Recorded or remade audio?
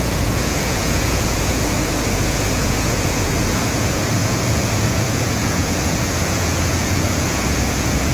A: remade